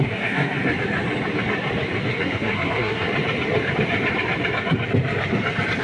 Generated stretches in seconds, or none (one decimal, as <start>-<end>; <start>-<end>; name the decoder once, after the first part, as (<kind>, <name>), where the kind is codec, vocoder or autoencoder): 0.0-0.7 (codec, SNAC); 2.1-3.1